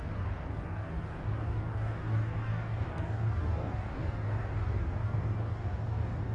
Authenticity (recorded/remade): remade